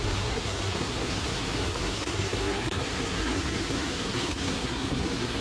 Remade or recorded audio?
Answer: remade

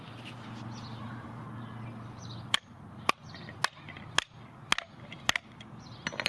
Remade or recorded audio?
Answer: recorded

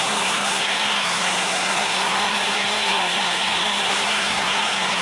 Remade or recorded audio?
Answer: remade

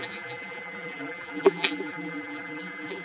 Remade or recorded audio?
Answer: remade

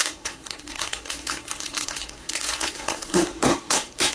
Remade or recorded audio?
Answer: remade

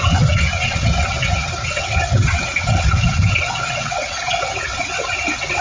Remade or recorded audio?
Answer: remade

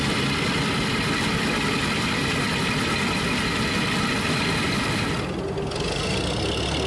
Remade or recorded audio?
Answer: recorded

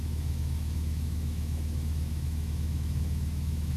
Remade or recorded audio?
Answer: remade